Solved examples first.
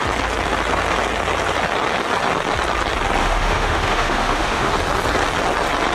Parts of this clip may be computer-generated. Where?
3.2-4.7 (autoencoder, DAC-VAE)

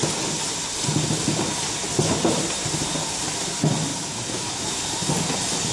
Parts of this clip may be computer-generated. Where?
3.9-4.8 (autoencoder, DAC-VAE)

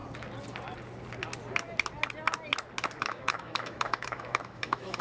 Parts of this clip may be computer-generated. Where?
3.0-5.0 (autoencoder, DAC-VAE)

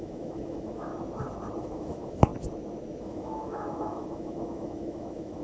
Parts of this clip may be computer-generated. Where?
0.0-0.9 (autoencoder, DAC-VAE); 1.6-2.3; 3.0-5.4

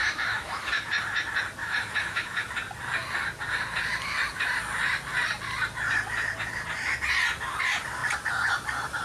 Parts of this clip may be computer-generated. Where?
0.0-0.9 (autoencoder, DAC-VAE); 1.6-2.5

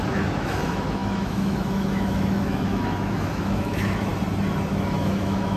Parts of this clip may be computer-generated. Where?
0.0-4.1 (autoencoder, DAC-VAE); 4.7-5.6

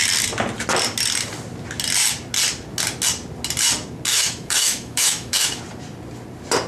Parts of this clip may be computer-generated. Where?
4.1-5.6 (autoencoder, DAC-VAE)